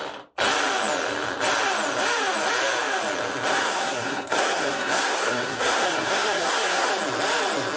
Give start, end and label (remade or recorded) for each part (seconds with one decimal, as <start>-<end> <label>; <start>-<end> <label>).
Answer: 0.0-3.5 recorded; 3.5-6.9 remade; 6.9-7.8 recorded